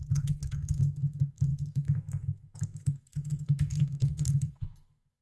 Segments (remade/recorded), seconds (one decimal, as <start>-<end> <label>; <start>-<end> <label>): 0.0-5.2 remade